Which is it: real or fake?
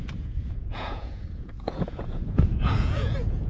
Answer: fake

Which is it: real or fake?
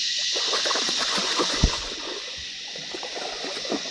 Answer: fake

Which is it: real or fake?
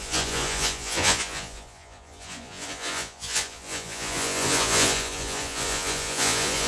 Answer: fake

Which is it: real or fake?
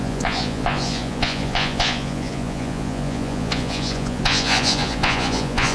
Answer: fake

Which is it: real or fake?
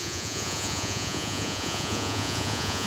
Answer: fake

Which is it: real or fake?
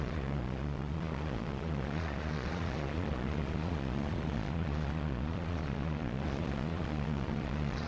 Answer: fake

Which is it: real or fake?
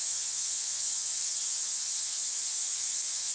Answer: fake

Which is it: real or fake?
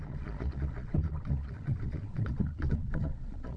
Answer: fake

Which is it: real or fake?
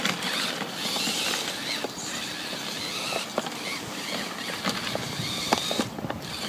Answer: real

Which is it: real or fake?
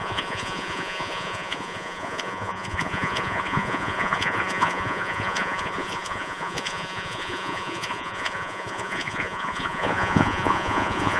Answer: fake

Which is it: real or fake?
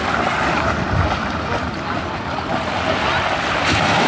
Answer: real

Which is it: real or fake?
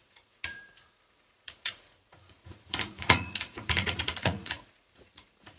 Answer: fake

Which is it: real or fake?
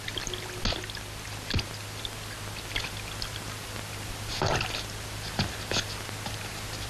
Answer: real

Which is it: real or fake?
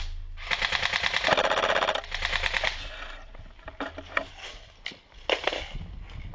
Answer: real